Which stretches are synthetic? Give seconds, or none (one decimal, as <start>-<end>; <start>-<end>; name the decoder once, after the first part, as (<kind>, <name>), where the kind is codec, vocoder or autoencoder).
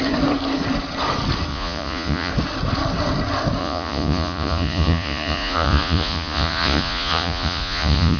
1.5-2.3 (vocoder, Vocos); 3.6-8.2